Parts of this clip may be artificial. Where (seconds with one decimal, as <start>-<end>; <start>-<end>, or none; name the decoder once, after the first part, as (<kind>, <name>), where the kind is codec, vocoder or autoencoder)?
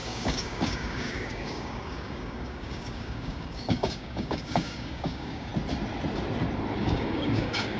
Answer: 0.0-5.5 (codec, DAC); 6.8-7.8